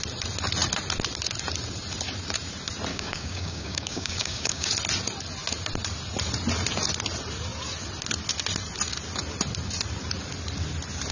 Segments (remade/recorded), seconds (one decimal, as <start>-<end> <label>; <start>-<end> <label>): 0.0-2.9 recorded; 2.9-4.7 remade; 4.7-11.1 recorded